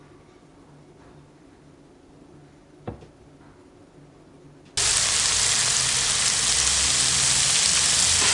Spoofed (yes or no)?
no